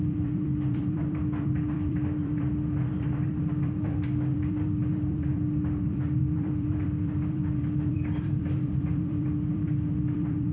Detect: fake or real fake